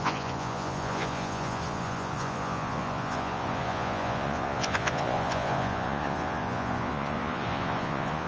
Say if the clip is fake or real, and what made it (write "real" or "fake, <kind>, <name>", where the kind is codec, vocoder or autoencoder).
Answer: fake, vocoder, Vocos